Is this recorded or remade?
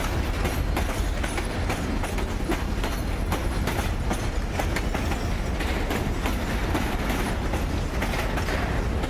recorded